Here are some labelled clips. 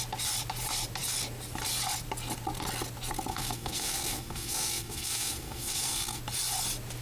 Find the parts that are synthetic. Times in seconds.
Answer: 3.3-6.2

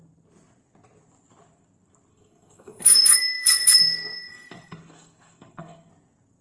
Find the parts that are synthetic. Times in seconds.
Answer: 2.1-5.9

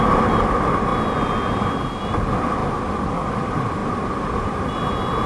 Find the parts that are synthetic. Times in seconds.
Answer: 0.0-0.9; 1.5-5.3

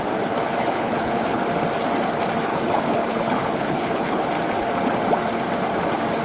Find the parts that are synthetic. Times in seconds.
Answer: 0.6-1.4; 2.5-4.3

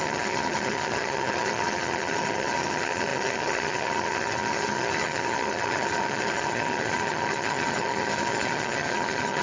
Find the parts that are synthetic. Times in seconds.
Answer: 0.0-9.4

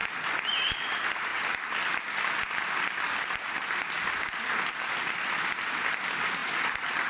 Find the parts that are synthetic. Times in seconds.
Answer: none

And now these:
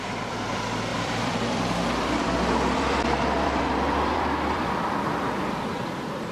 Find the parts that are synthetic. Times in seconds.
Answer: 0.9-4.7; 5.7-6.3